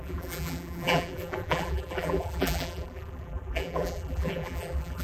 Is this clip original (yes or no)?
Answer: no